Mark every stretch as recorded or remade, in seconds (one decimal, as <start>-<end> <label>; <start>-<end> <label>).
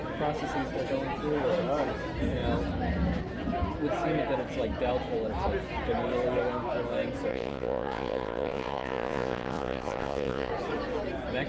0.0-7.3 recorded; 7.3-10.5 remade; 10.5-11.5 recorded